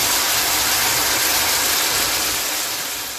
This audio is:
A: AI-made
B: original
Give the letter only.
B